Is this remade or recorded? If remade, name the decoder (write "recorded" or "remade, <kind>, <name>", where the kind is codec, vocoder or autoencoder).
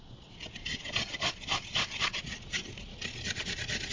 remade, vocoder, Vocos